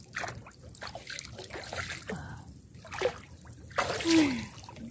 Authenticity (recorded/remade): recorded